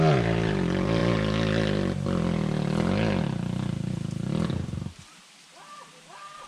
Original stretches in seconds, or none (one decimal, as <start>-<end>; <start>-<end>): 0.0-6.5